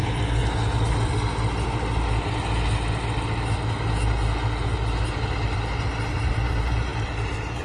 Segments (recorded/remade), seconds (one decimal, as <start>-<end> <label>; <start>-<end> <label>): 0.0-0.4 remade; 0.4-5.0 recorded; 5.0-7.6 remade